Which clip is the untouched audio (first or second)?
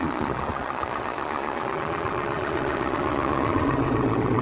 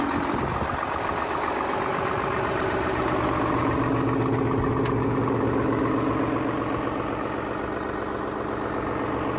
second